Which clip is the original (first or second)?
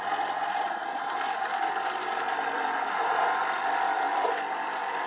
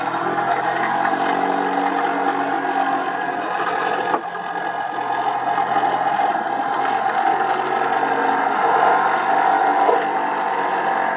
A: second